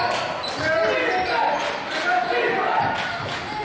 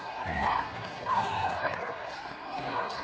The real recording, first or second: first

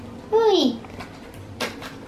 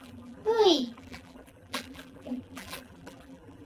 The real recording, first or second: first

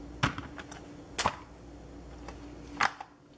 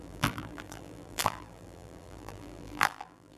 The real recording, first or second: first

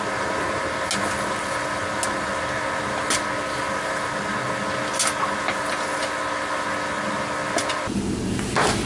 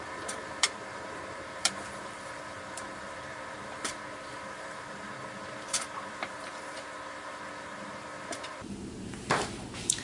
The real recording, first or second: first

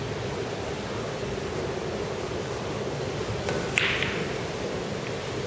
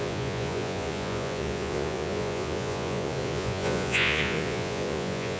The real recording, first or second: first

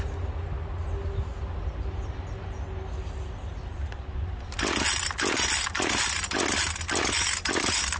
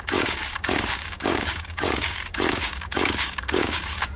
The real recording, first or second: first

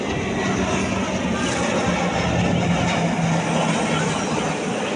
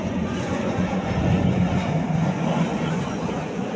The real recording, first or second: first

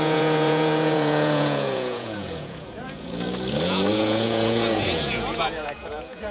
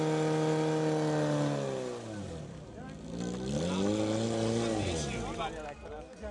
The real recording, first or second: second